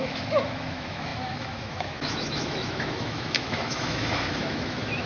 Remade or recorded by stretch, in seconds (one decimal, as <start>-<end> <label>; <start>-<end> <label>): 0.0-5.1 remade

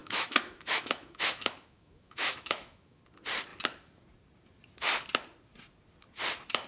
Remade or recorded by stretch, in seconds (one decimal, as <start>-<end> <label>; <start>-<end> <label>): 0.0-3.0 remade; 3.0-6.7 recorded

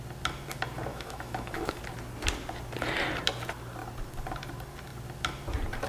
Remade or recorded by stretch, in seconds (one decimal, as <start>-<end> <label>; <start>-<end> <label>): 0.0-0.9 recorded; 0.9-1.8 remade; 1.8-5.9 recorded

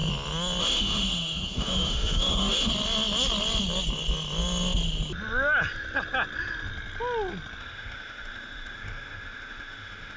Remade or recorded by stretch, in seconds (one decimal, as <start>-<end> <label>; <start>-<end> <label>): 0.0-0.6 recorded; 0.6-2.7 remade; 2.7-7.6 recorded; 7.6-10.2 remade

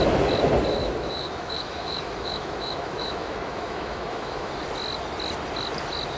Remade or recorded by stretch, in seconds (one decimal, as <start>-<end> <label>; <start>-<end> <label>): 0.0-0.8 recorded; 0.8-4.5 remade; 4.5-6.2 recorded

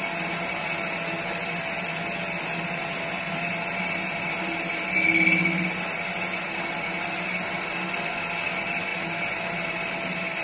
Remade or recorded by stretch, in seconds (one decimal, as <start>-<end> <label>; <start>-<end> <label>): 0.0-10.4 recorded

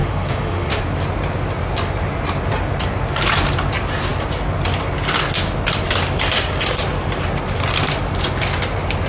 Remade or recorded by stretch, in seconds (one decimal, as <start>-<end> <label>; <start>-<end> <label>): 0.0-0.8 remade; 0.8-9.1 recorded